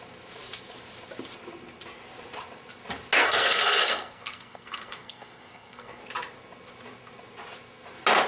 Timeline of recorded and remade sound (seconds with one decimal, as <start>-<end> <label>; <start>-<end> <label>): 0.0-3.2 recorded; 3.2-6.0 remade; 6.0-8.3 recorded